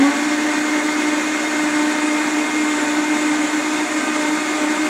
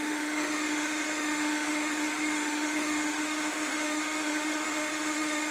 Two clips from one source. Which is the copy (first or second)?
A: second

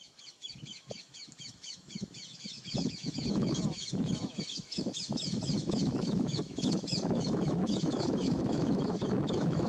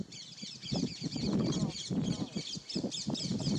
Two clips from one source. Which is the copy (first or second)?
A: first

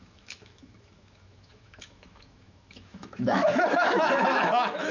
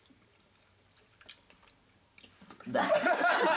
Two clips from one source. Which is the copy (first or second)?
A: first